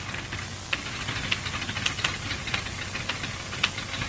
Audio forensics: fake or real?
real